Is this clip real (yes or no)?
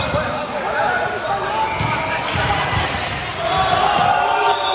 yes